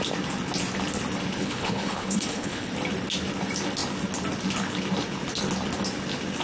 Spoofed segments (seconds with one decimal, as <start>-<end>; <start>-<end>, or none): 1.4-2.7